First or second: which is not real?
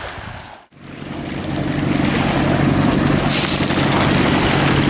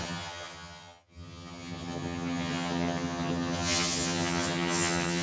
second